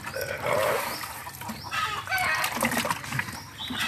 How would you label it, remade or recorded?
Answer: recorded